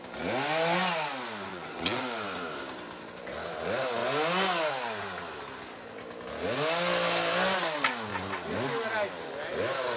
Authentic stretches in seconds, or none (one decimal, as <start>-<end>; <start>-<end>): 0.0-1.5; 2.0-10.0